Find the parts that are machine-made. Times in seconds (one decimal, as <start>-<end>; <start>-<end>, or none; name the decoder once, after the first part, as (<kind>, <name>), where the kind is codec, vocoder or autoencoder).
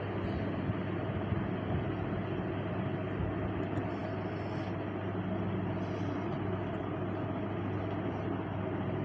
none